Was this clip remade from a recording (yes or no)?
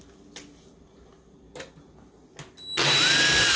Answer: no